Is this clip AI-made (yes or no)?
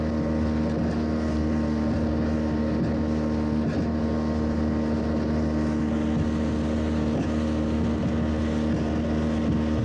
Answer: no